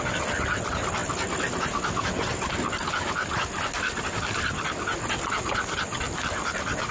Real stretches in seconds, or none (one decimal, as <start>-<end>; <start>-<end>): 0.0-6.9